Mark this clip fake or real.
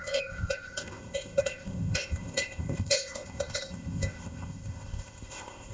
fake